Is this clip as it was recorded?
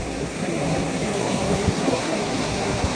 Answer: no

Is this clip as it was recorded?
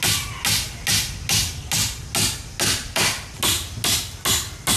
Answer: yes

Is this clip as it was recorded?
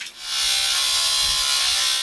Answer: yes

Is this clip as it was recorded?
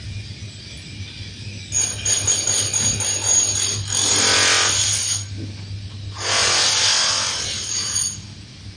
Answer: yes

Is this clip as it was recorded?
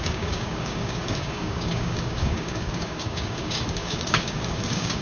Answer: no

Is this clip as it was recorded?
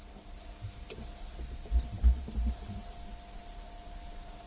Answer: yes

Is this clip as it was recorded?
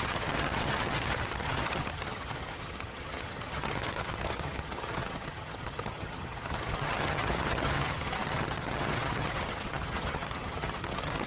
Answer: no